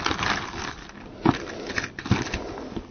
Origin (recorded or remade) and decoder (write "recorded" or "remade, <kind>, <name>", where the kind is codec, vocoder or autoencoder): recorded